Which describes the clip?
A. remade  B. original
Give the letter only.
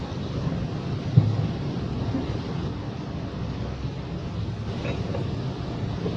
B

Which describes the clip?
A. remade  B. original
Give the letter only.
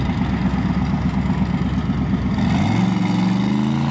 B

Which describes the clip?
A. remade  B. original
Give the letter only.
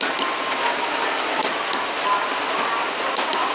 B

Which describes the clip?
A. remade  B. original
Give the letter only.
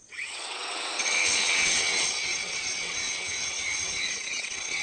A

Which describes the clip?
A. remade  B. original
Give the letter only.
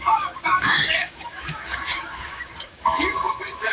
A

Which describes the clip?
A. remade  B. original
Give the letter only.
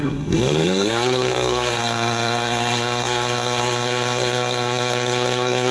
A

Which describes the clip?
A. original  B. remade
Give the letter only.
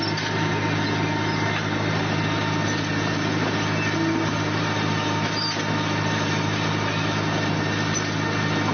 A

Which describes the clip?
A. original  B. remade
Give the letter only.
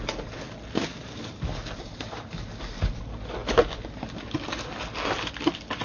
A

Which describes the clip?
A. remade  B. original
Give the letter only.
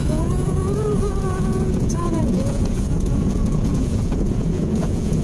A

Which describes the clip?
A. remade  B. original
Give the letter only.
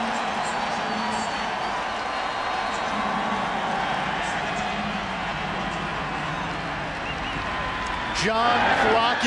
B